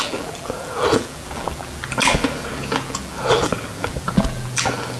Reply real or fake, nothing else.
fake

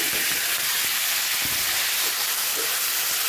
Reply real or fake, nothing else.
real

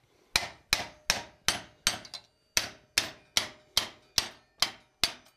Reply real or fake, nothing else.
real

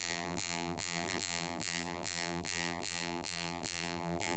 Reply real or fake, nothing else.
fake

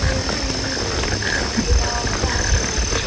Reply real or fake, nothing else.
real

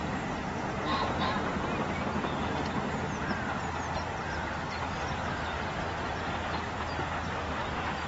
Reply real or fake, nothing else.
real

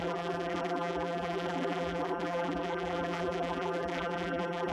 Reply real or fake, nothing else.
fake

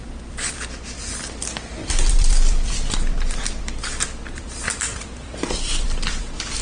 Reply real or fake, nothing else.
fake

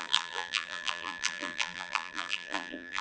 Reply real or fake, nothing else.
fake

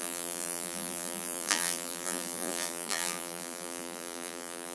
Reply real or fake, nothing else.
fake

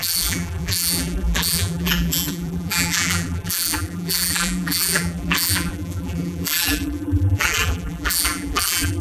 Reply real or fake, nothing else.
fake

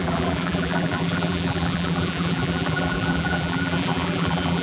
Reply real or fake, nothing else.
fake